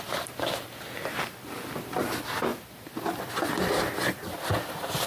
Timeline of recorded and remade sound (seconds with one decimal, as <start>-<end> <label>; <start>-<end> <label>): 0.0-5.1 remade